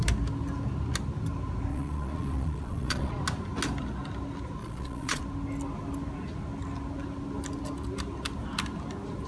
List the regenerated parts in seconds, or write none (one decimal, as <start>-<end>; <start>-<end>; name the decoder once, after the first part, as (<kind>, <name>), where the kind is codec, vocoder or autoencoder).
1.7-3.1 (vocoder, Vocos); 4.6-5.2